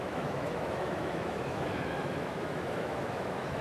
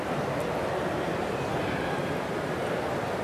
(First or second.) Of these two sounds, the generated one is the first